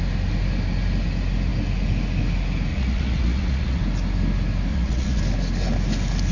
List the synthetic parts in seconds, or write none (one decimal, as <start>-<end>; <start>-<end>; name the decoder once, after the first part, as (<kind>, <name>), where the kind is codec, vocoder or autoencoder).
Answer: 2.7-3.8 (vocoder, Vocos); 4.7-5.2